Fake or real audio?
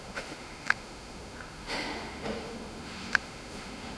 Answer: fake